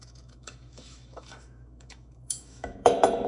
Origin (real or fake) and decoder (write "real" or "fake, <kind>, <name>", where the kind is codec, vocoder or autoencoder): fake, autoencoder, DAC-VAE